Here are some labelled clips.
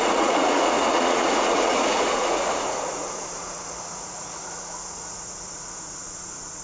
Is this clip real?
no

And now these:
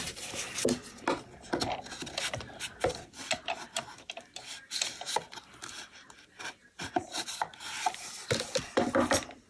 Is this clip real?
yes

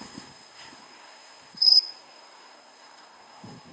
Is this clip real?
no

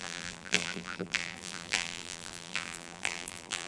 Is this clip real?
no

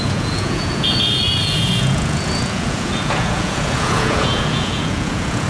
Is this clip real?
no